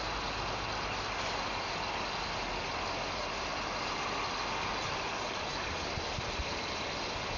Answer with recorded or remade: recorded